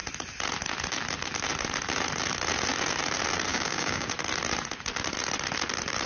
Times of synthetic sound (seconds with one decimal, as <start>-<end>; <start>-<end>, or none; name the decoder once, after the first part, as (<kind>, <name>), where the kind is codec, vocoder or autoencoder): 3.5-4.1 (codec, DAC)